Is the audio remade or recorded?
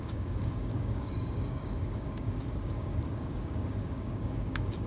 remade